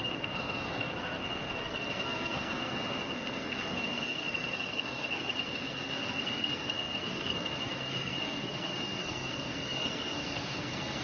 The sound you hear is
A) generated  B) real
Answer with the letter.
A